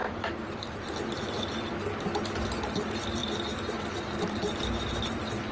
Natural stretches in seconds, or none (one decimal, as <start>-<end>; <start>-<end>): 0.0-5.5

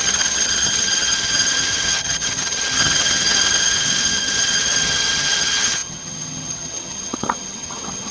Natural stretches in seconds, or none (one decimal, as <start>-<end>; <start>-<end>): none

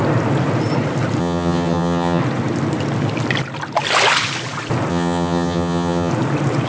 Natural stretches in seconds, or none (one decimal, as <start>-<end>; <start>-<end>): 0.0-1.2; 2.2-4.9; 6.1-6.7

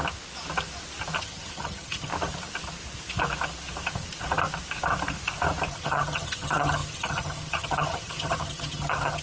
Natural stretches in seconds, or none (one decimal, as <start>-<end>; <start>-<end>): 0.0-1.2; 2.1-5.7